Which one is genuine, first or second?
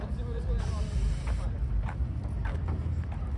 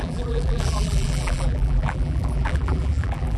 first